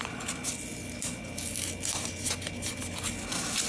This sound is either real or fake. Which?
real